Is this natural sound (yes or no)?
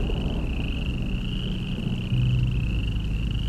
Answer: yes